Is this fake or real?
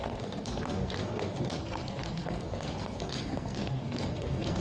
fake